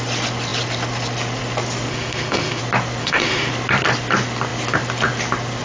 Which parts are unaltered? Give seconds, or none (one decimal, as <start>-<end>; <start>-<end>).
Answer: 0.0-1.9; 2.6-3.0; 3.5-5.6